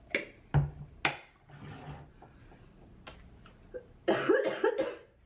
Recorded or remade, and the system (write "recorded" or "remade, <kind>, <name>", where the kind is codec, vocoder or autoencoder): recorded